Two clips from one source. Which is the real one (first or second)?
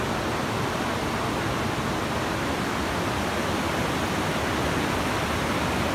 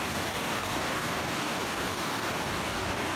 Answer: first